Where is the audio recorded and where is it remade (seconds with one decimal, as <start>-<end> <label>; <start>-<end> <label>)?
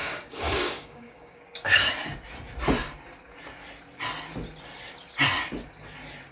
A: 0.0-1.9 remade; 1.9-6.3 recorded